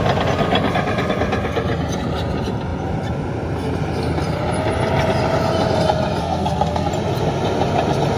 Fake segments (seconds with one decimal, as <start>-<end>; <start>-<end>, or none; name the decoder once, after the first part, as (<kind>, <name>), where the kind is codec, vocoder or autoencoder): 6.2-6.9 (codec, SNAC)